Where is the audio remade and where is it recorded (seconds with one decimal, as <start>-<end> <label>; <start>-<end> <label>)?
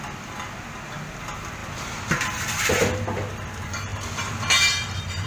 0.0-5.3 recorded